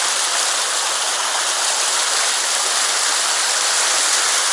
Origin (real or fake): real